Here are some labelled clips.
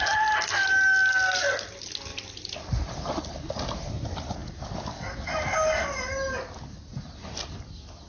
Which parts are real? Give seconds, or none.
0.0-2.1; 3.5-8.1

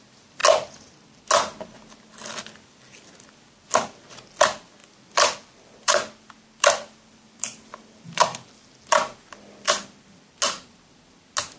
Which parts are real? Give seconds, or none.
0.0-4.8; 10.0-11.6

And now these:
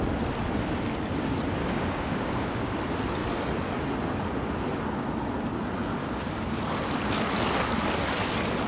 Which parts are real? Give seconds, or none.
0.0-1.6; 2.7-6.0; 6.6-8.7

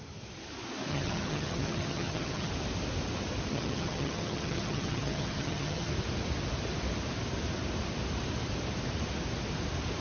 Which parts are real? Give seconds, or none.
0.0-0.9; 2.5-3.5; 5.9-10.0

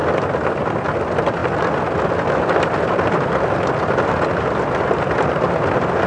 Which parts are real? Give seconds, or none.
0.0-6.1

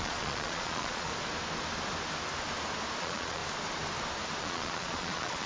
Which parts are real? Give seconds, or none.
1.1-3.0; 3.4-4.4

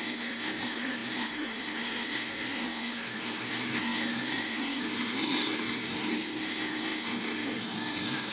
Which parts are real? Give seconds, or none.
none

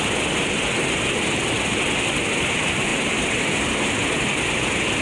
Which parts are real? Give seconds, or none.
0.0-5.0